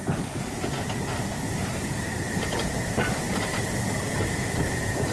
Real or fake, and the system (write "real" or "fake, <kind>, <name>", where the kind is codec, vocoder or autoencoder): fake, vocoder, BigVGAN v2